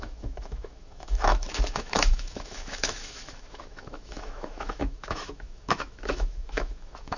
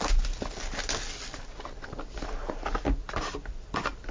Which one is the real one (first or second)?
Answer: second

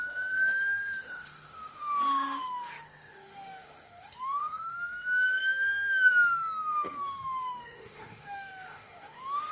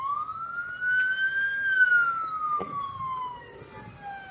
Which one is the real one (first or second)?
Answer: second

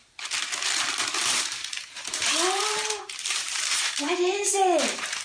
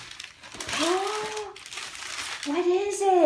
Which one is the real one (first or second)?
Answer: second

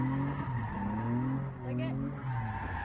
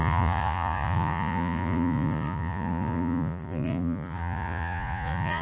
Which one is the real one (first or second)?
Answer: first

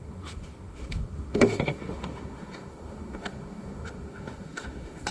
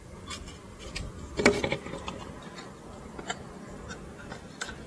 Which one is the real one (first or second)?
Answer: second